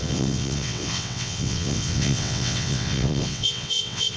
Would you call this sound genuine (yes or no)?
no